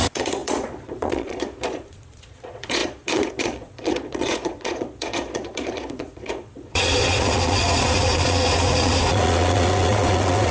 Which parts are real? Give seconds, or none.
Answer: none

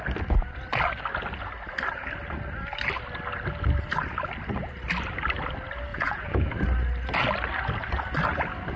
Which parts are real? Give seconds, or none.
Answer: 0.0-5.9; 6.5-8.8